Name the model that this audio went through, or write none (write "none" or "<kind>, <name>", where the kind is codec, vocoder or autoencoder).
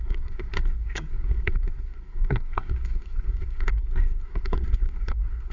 codec, SNAC